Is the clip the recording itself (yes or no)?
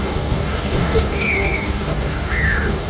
no